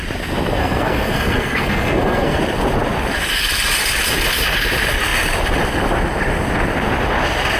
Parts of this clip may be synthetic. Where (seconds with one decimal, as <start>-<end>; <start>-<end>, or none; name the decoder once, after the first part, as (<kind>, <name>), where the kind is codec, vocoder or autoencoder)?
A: 0.6-2.4 (codec, SNAC)